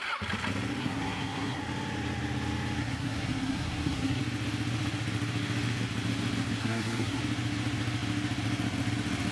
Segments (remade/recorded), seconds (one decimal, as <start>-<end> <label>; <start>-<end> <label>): 0.0-0.8 recorded; 0.8-1.6 remade; 1.6-2.8 recorded; 2.8-4.2 remade; 4.2-6.6 recorded; 6.6-7.2 remade; 7.2-9.3 recorded